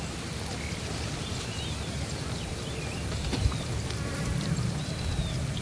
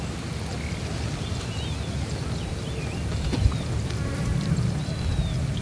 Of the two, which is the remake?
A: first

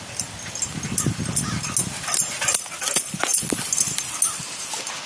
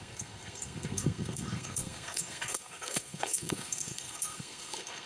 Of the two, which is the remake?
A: second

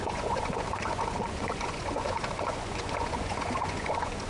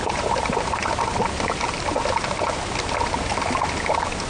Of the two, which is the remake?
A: first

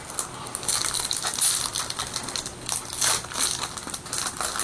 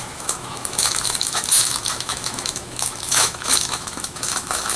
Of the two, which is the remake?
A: second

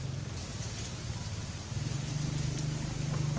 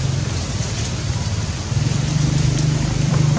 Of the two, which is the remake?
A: second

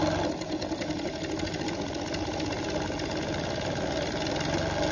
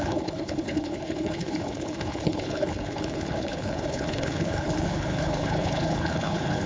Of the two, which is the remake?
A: second